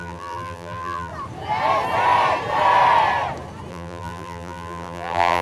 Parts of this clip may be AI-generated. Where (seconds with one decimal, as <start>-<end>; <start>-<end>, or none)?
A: 0.0-1.1; 3.7-5.4